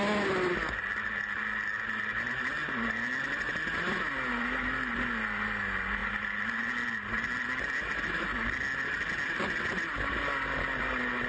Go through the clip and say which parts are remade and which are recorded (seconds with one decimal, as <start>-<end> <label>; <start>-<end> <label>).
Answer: 0.0-11.3 recorded